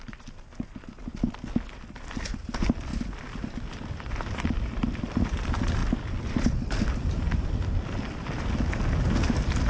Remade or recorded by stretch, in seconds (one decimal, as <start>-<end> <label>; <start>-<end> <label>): 0.0-9.7 recorded